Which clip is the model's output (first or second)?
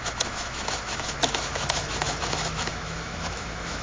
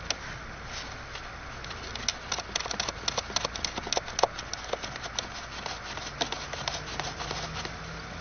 first